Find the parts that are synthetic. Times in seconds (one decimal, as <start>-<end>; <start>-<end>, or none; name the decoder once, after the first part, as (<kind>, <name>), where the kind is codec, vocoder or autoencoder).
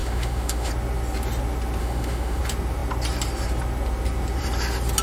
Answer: 0.0-0.7 (autoencoder, DAC-VAE); 1.8-2.4